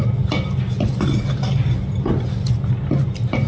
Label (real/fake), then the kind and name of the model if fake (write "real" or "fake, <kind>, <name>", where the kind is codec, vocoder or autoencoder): real